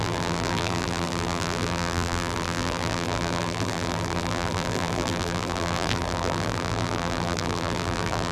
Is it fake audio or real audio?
fake